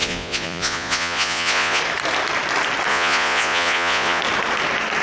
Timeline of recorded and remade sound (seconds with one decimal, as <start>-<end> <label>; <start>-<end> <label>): 0.0-1.8 remade; 1.8-2.9 recorded; 2.9-4.2 remade; 4.2-5.0 recorded